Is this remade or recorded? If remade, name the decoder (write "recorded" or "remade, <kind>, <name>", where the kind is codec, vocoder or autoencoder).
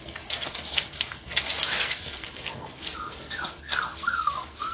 remade, codec, SNAC